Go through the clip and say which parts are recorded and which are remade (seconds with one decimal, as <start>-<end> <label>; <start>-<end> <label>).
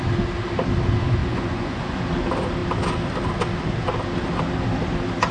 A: 0.0-1.2 recorded; 1.2-2.0 remade; 2.0-5.3 recorded